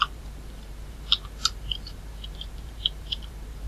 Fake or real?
fake